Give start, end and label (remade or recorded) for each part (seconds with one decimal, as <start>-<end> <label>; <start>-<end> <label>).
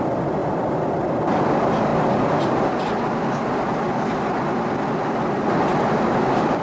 0.0-1.9 remade; 1.9-5.9 recorded; 5.9-6.6 remade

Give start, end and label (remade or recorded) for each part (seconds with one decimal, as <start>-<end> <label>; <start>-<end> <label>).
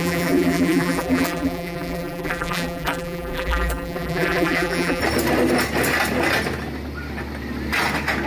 0.0-5.0 remade; 5.0-8.3 recorded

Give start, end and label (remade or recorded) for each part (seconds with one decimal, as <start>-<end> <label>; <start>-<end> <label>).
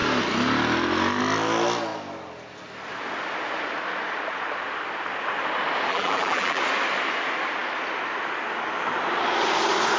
0.0-5.9 recorded; 5.9-6.6 remade; 6.6-10.0 recorded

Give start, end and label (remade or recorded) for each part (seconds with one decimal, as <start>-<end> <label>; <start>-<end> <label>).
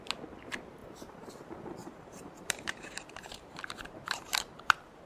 0.0-0.8 recorded; 0.8-1.3 remade; 1.3-1.8 recorded; 1.8-5.1 remade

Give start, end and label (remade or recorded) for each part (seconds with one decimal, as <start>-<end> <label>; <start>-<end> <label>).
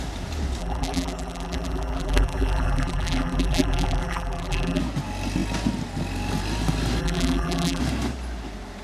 0.0-0.6 recorded; 0.6-4.8 remade; 4.8-7.0 recorded; 7.0-7.8 remade; 7.8-8.8 recorded